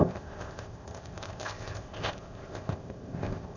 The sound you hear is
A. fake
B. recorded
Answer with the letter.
A